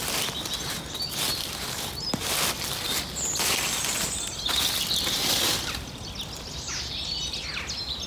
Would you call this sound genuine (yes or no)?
yes